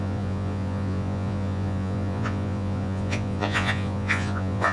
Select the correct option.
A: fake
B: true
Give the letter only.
A